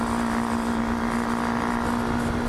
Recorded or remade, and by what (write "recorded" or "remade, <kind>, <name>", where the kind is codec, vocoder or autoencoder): recorded